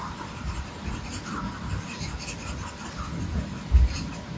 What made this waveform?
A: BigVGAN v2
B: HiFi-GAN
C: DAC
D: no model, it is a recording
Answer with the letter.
D